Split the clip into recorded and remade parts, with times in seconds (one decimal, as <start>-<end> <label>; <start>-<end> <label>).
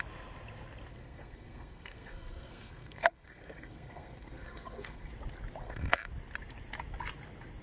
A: 0.0-0.9 recorded; 0.9-5.1 remade; 5.1-5.6 recorded; 5.6-6.1 remade; 6.1-7.6 recorded